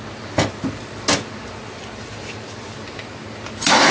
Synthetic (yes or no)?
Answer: no